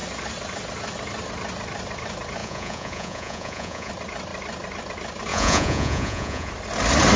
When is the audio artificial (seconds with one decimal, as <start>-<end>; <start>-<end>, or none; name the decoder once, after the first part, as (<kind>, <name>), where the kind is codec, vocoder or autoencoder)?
2.4-3.9 (vocoder, Vocos); 5.3-6.5